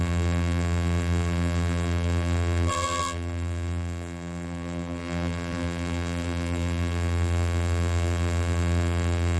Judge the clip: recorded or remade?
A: remade